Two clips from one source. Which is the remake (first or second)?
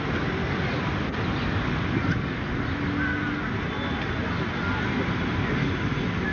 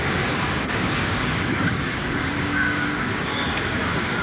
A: second